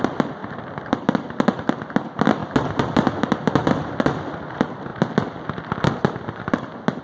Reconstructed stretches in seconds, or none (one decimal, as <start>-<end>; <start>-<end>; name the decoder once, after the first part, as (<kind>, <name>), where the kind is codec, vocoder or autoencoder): 0.4-1.3 (vocoder, BigVGAN v2); 2.4-4.5